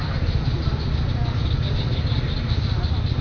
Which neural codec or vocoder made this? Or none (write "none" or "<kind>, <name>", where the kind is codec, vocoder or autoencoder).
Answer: none